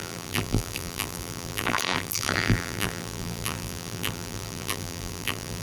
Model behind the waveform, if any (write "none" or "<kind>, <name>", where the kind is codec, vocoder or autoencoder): vocoder, BigVGAN v2